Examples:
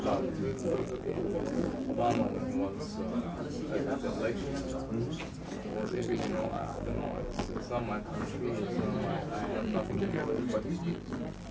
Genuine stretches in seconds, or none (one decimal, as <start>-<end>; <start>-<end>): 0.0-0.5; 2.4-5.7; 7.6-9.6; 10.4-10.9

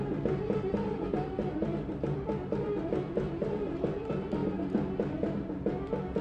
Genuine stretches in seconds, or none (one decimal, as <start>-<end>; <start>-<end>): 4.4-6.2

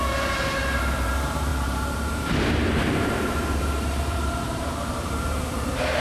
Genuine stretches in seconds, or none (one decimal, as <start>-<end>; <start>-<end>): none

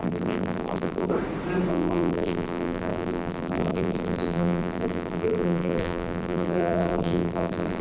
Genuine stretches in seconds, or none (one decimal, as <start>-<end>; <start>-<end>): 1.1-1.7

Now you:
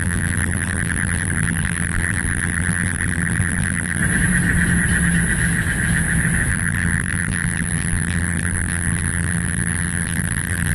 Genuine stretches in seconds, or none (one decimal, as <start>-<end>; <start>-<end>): 4.0-6.5

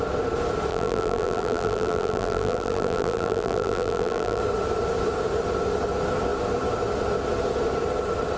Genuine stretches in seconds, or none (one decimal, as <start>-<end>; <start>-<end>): 0.0-0.7; 4.4-8.4

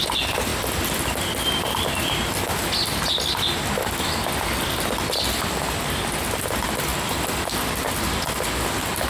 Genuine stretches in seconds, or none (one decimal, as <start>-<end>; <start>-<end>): 0.0-9.1